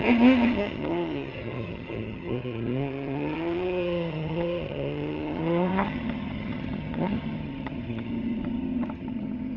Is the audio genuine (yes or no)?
no